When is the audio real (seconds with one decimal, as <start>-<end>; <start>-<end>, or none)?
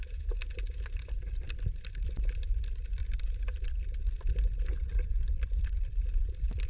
3.0-5.2